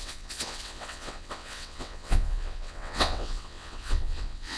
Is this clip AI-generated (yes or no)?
yes